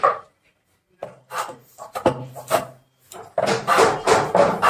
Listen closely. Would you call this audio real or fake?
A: real